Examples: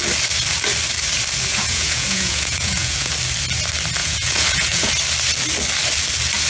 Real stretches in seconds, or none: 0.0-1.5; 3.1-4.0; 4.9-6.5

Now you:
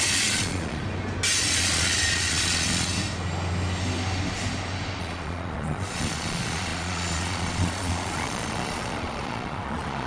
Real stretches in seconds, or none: 0.8-1.4; 2.9-5.0